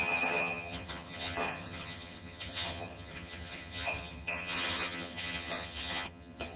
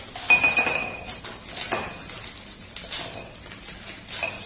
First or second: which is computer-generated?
first